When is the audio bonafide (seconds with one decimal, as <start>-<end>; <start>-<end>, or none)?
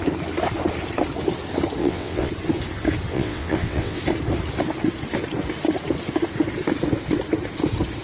0.0-1.8; 2.3-3.1; 4.0-8.0